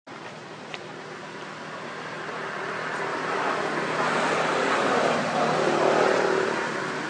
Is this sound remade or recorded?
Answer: recorded